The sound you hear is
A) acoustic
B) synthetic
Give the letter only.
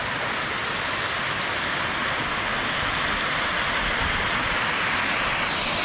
A